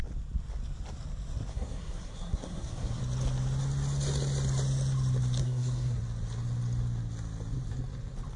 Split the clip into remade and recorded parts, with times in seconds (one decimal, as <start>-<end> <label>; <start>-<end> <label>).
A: 0.0-1.5 recorded; 1.5-3.0 remade; 3.0-5.4 recorded; 5.4-6.0 remade; 6.0-8.4 recorded